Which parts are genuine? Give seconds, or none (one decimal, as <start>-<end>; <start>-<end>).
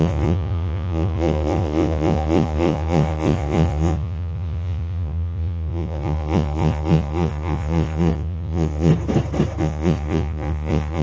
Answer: 8.9-9.6